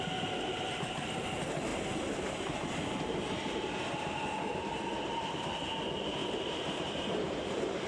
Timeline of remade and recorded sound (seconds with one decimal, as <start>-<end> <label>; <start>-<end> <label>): 0.0-4.9 recorded; 4.9-5.5 remade; 5.5-6.2 recorded; 6.2-7.9 remade